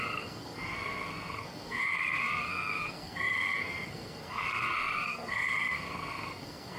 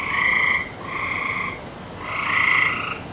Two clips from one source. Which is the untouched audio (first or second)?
second